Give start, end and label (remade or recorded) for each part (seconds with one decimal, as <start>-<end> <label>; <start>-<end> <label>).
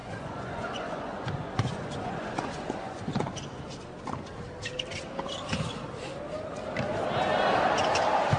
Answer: 0.0-3.6 remade; 3.6-8.4 recorded